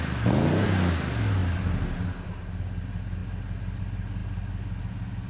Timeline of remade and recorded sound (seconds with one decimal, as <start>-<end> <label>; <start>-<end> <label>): 0.0-5.3 recorded